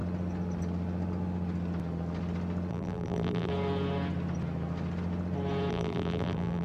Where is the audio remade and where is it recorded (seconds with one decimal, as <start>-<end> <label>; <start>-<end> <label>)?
0.0-2.7 recorded; 2.7-3.5 remade; 3.5-5.7 recorded; 5.7-6.6 remade